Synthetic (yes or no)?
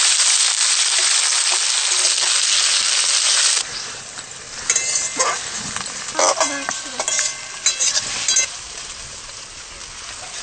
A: no